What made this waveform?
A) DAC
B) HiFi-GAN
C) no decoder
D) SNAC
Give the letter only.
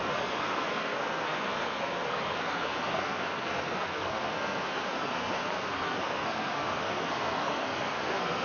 D